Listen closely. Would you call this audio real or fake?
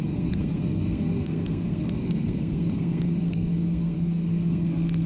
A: fake